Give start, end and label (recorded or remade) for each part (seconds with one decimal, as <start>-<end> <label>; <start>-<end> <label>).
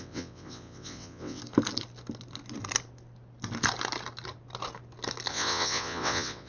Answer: 0.0-1.4 remade; 1.4-5.3 recorded; 5.3-6.5 remade